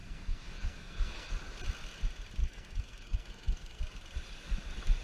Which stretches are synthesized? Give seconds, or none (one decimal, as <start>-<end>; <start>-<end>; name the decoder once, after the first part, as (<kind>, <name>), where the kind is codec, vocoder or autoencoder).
0.0-1.3 (codec, SNAC); 2.4-3.8